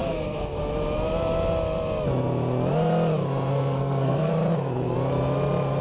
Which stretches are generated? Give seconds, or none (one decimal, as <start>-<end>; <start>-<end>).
0.0-0.6; 3.5-4.3